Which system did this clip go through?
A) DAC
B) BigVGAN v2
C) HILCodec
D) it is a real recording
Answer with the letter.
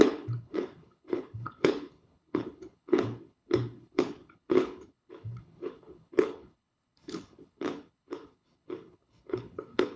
C